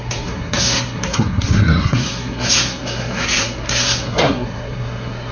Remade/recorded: remade